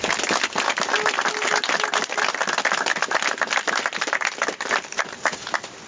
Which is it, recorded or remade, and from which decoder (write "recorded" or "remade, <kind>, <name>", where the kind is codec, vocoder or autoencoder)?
recorded